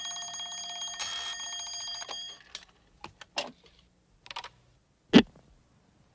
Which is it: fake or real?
real